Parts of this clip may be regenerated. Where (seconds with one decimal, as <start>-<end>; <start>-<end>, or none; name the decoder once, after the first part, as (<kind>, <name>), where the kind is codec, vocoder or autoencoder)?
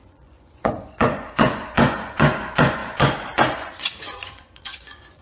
0.0-5.2 (vocoder, Vocos)